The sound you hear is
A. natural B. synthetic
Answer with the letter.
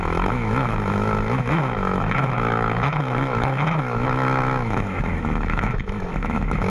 B